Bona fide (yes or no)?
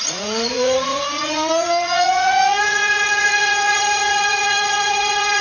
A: no